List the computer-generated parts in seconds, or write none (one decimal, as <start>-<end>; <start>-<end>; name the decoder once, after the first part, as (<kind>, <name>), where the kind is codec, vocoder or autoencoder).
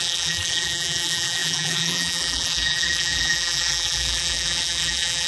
0.0-5.3 (vocoder, BigVGAN v2)